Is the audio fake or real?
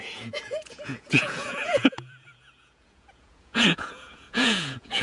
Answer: fake